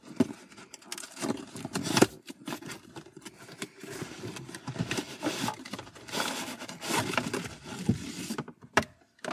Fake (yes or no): no